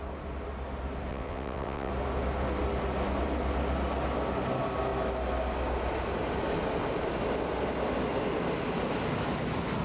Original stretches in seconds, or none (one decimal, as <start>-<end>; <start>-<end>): 0.0-1.1; 1.9-9.8